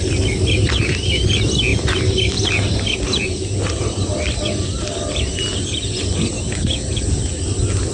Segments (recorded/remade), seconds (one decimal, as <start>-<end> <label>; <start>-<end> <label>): 0.0-7.9 recorded